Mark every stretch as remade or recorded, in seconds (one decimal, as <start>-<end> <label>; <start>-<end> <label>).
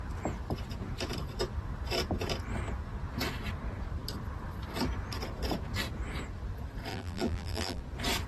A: 0.0-6.9 recorded; 6.9-7.8 remade; 7.8-8.3 recorded